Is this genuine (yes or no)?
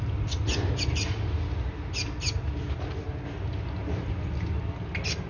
yes